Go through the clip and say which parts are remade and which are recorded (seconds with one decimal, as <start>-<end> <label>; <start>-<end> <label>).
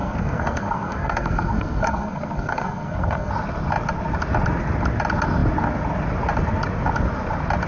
0.0-3.3 remade; 3.3-7.7 recorded